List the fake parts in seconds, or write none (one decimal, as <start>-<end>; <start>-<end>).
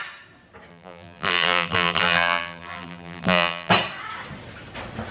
0.7-3.7